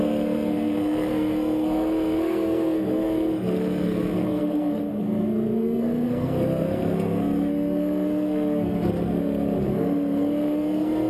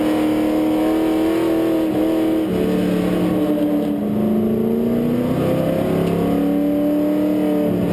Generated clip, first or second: first